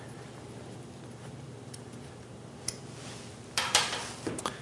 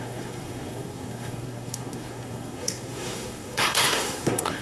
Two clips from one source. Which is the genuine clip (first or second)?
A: first